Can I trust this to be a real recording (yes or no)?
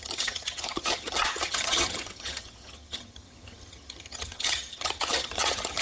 no